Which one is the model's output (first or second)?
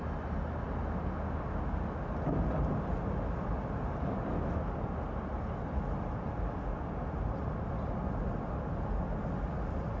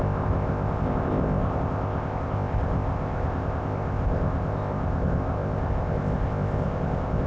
second